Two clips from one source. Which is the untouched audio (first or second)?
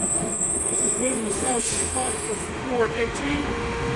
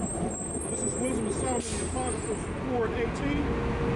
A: second